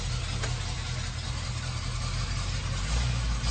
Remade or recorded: recorded